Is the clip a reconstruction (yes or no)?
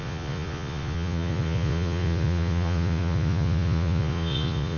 yes